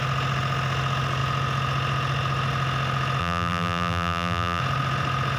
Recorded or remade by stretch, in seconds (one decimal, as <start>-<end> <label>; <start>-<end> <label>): 0.0-3.2 recorded; 3.2-4.6 remade; 4.6-5.4 recorded